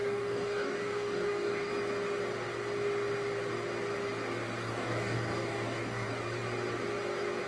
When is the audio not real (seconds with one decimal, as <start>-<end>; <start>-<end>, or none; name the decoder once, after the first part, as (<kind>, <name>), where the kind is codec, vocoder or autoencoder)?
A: 0.0-1.7 (codec, DAC); 4.7-6.1